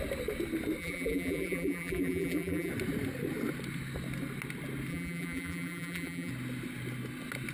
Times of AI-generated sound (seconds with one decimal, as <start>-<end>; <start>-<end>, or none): 0.8-2.7; 4.9-6.3